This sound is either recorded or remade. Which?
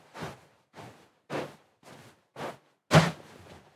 recorded